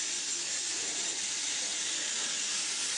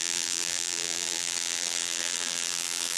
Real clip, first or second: first